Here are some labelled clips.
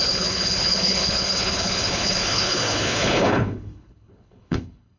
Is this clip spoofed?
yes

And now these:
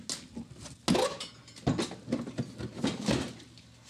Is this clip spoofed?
no